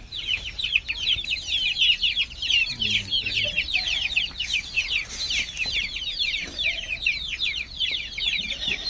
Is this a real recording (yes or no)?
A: yes